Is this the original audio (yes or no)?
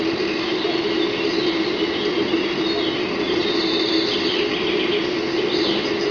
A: yes